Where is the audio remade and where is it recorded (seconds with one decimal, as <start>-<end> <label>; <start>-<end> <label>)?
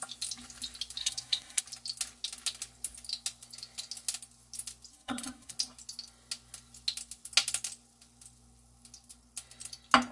0.0-1.0 recorded; 1.0-1.6 remade; 1.6-4.9 recorded; 4.9-5.5 remade; 5.5-10.1 recorded